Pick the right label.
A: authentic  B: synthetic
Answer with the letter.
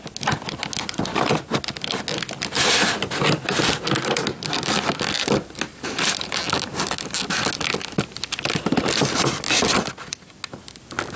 A